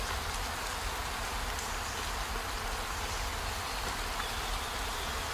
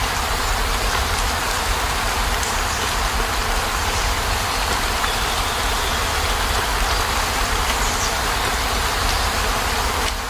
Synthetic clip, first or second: second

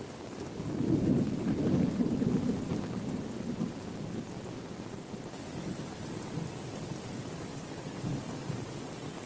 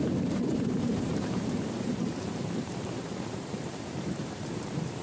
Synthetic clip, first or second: second